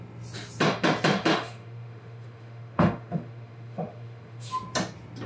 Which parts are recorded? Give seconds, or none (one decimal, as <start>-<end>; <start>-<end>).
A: 0.0-1.3; 4.5-5.3

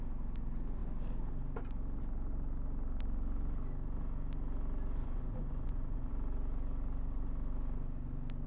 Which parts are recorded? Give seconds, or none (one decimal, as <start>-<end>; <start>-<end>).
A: 0.0-5.0; 6.1-8.5

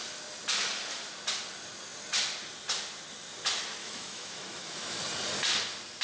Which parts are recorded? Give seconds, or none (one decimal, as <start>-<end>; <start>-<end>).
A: 0.0-3.8; 5.0-6.0

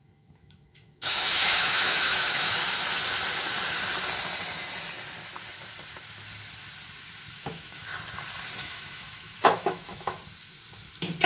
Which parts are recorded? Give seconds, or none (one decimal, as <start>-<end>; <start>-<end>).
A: 2.6-7.3; 7.9-8.6; 10.2-11.3

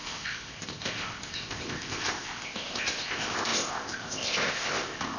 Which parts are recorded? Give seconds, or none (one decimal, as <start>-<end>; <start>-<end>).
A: none

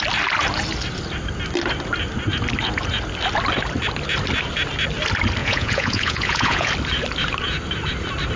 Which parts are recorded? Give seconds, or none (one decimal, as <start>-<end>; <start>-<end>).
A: 0.0-5.4; 6.7-8.4

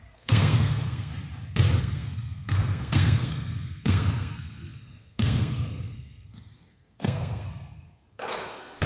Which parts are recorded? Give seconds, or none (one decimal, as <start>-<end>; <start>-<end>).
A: 1.1-1.8

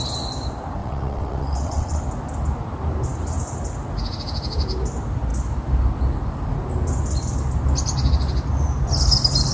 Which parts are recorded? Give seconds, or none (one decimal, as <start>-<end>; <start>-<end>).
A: 0.0-0.8; 2.0-9.5